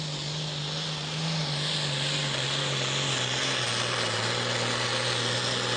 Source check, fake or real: real